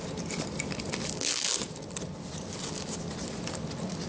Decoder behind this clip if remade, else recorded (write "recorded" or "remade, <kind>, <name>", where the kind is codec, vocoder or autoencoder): recorded